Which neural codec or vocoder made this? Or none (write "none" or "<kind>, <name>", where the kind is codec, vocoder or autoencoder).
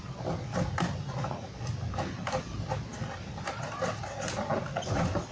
none